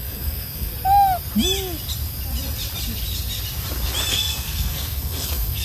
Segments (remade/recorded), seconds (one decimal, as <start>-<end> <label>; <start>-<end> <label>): 0.0-0.7 remade; 0.7-4.1 recorded; 4.1-5.6 remade